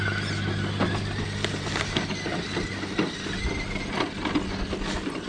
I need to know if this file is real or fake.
real